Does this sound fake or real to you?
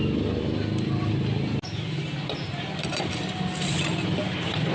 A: real